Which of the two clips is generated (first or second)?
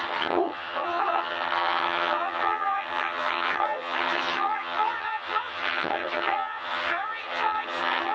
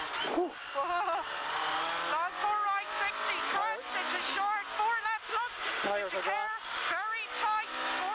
first